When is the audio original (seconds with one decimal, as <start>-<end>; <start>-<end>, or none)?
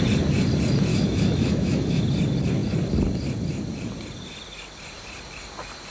0.0-0.9; 2.0-5.9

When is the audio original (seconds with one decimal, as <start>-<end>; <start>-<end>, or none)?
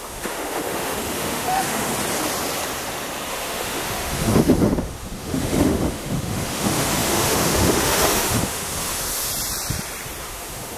1.9-3.3; 9.3-10.2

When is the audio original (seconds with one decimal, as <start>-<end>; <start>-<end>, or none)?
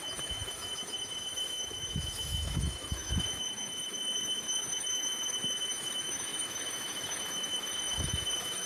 none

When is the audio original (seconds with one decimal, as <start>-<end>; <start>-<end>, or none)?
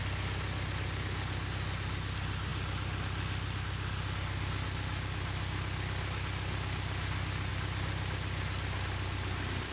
0.0-9.7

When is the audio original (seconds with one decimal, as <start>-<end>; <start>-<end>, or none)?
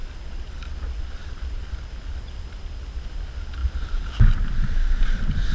0.0-5.5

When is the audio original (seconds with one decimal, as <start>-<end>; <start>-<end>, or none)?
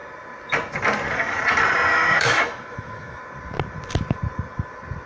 0.0-1.9; 3.2-5.1